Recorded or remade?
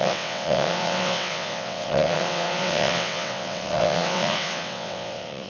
remade